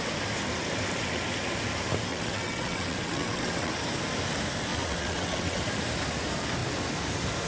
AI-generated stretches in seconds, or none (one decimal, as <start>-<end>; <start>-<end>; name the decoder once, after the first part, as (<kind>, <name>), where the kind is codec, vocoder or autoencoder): 2.1-3.7 (vocoder, WaveNeXt); 4.7-5.6